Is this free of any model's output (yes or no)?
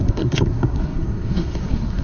no